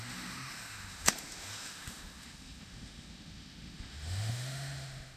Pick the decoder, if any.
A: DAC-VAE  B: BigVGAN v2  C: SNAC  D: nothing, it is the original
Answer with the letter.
A